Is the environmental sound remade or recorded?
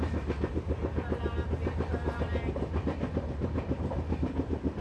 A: recorded